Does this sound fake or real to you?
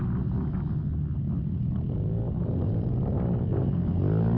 real